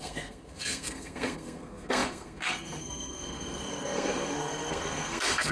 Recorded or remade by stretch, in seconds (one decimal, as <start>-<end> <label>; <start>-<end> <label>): 0.0-5.5 remade